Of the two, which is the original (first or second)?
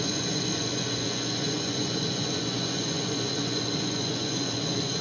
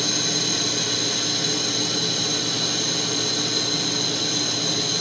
second